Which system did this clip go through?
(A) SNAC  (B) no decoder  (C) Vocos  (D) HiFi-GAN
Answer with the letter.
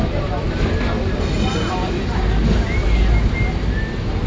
B